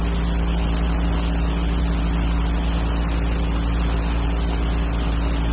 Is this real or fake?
real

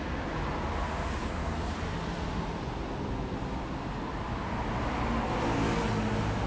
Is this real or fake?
real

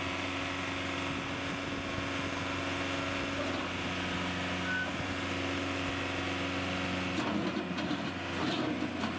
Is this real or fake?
real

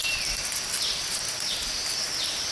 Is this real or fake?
real